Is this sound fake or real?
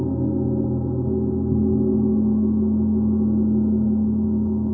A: real